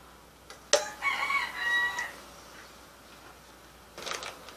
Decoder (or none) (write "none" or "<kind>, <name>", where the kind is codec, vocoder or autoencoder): none